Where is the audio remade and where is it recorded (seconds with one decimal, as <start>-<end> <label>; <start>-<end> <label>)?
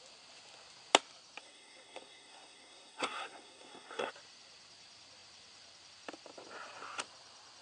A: 0.0-1.4 recorded; 1.4-4.1 remade; 4.1-7.6 recorded